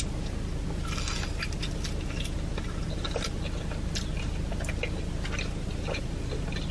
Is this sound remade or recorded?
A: recorded